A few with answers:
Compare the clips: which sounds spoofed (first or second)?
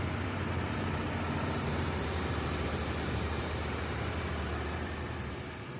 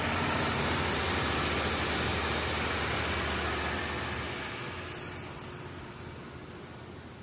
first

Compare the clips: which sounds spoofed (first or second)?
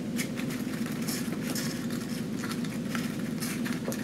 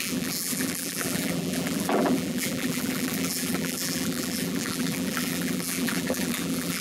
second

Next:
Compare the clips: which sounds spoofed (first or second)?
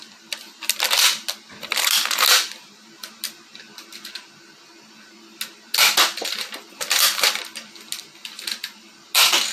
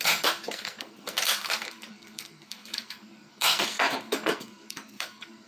second